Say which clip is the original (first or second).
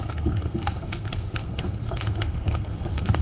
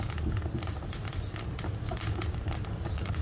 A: second